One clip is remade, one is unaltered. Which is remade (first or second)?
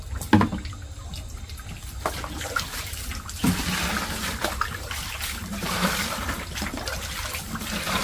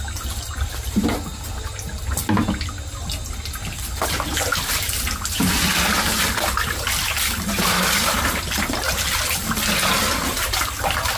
first